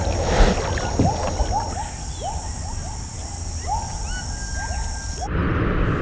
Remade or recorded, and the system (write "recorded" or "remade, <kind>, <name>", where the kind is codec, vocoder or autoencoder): recorded